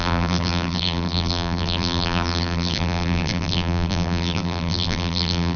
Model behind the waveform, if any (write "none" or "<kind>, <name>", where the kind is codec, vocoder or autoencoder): vocoder, BigVGAN v2